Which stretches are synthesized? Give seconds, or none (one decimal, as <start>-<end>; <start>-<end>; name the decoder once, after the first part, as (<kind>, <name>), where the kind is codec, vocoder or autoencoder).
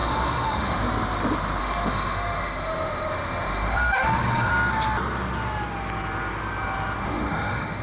0.0-0.8 (autoencoder, DAC-VAE); 1.6-4.5; 7.0-7.8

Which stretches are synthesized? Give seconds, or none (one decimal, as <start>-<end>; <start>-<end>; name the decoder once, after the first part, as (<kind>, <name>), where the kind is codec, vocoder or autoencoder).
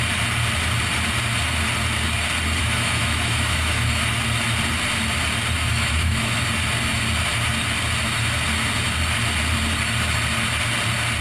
2.6-4.1 (autoencoder, DAC-VAE); 5.7-6.4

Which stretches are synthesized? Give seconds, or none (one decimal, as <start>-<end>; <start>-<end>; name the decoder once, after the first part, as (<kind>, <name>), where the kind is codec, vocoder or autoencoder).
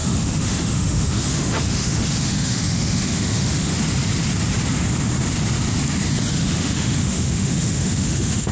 0.0-3.7 (autoencoder, DAC-VAE); 6.3-8.5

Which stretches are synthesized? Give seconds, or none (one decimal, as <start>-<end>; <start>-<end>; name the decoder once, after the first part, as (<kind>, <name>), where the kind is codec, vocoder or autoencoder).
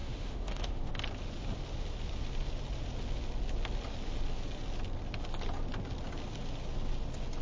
0.0-0.9 (autoencoder, DAC-VAE)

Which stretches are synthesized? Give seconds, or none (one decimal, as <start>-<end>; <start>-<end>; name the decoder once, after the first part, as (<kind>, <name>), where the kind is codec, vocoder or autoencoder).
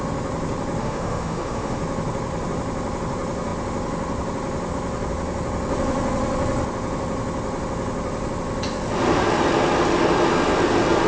0.8-1.8 (autoencoder, DAC-VAE)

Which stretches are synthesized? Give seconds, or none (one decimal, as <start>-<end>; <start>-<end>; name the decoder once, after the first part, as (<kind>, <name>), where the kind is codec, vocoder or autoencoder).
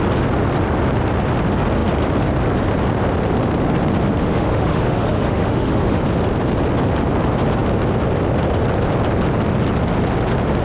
4.2-6.0 (autoencoder, DAC-VAE)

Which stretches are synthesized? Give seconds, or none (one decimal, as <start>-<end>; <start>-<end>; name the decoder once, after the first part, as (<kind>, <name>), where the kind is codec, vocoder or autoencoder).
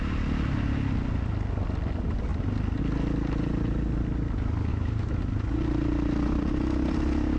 4.7-5.2 (autoencoder, DAC-VAE)